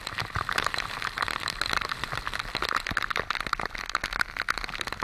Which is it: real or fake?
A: real